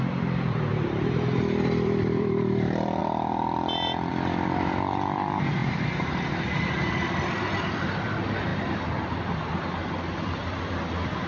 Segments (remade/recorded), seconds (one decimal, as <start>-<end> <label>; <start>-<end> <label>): 0.0-11.3 remade